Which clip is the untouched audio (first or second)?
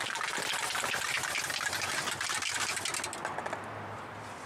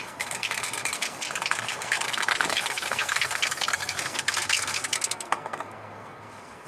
first